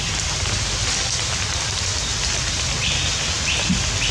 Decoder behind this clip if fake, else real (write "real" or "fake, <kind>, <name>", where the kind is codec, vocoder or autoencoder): real